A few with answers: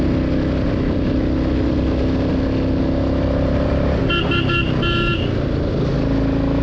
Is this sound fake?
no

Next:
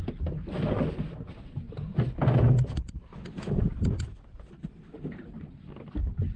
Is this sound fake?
no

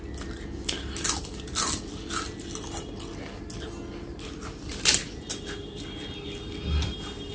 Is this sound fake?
no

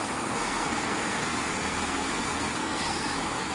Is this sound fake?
yes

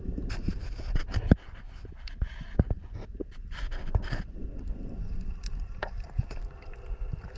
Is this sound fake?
no